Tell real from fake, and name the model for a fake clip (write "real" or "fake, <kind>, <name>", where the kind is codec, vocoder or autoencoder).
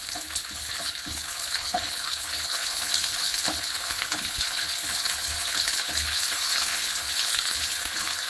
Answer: fake, codec, HILCodec